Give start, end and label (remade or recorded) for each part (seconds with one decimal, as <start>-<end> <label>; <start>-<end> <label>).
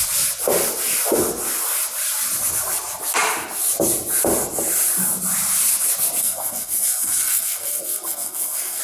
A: 0.0-6.2 recorded; 6.2-8.8 remade